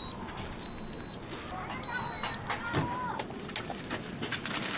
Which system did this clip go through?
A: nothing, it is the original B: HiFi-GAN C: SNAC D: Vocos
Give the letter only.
A